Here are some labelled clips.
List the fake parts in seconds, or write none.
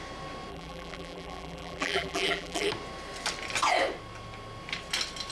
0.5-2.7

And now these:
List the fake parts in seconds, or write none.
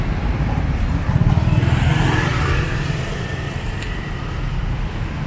2.3-4.6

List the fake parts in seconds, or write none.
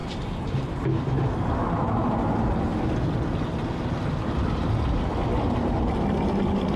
none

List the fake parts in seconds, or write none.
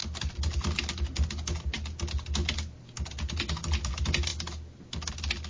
0.0-1.5; 4.3-5.1